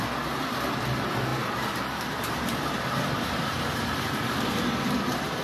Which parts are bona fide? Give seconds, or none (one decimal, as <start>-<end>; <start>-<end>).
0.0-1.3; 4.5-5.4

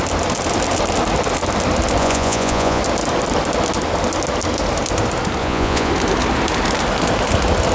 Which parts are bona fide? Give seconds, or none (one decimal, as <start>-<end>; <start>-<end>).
0.0-2.0; 2.8-5.4; 5.9-7.7

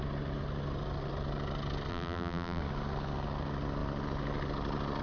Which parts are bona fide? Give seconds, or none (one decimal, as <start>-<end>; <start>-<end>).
0.0-1.9; 2.6-5.0

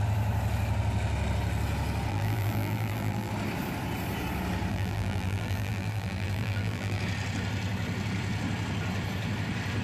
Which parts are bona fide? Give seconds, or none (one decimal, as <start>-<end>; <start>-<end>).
0.0-2.1; 3.3-4.7; 7.0-9.8